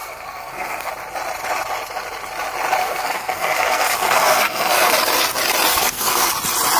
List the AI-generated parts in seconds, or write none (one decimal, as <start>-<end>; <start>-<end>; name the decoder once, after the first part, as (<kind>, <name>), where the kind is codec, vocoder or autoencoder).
0.0-0.9 (codec, SNAC); 2.8-4.9; 5.7-6.3